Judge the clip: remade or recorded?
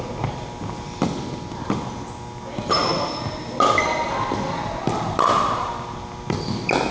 recorded